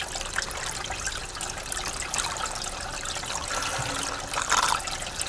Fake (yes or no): no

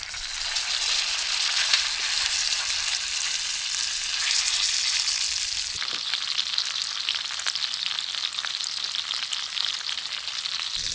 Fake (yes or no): no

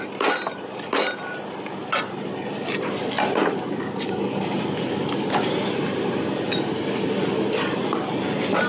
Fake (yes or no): no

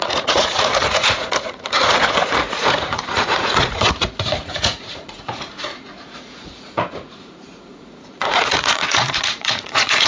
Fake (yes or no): yes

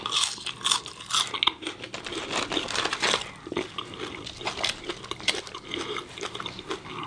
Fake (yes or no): no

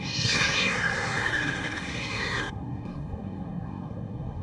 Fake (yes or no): yes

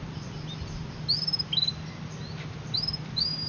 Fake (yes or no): no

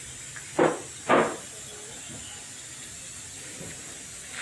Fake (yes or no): no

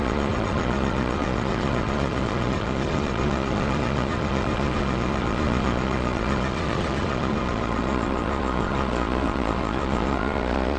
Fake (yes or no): yes